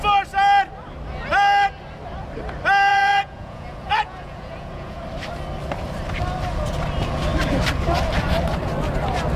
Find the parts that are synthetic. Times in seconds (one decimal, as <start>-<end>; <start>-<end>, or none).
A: 2.9-5.0